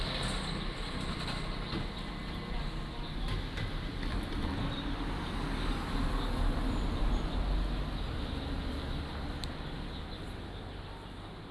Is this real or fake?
real